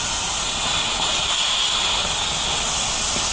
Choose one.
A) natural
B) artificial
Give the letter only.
A